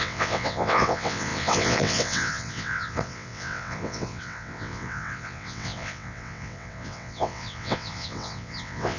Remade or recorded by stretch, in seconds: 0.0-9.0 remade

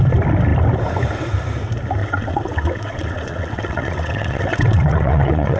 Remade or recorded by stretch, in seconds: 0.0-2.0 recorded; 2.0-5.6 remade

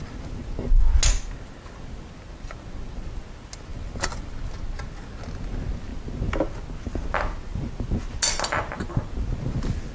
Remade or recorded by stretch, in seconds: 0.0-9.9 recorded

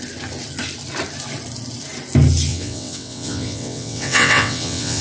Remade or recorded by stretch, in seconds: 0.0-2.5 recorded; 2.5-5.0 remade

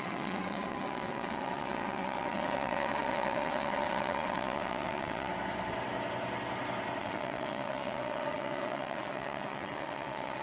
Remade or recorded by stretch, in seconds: 0.0-5.3 remade; 5.3-7.0 recorded; 7.0-10.4 remade

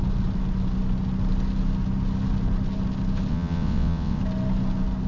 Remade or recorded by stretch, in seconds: 0.0-3.3 recorded; 3.3-4.2 remade; 4.2-5.1 recorded

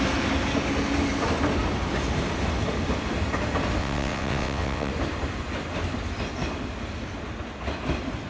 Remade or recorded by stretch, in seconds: 0.0-3.8 recorded; 3.8-4.9 remade; 4.9-8.3 recorded